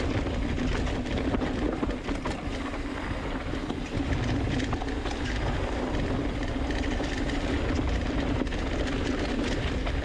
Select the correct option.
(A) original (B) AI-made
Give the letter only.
A